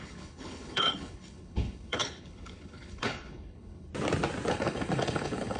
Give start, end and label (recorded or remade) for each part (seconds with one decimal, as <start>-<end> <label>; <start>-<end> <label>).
0.0-3.9 remade; 3.9-4.5 recorded; 4.5-5.6 remade